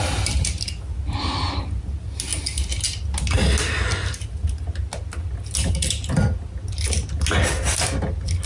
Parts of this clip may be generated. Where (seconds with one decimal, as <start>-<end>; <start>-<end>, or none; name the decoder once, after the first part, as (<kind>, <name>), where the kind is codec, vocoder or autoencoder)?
none